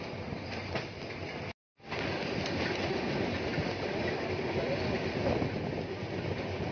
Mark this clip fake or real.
real